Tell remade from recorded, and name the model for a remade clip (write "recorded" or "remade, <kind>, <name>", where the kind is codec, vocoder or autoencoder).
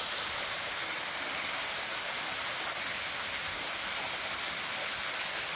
recorded